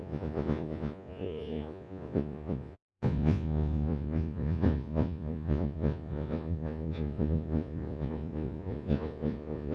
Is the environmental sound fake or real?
fake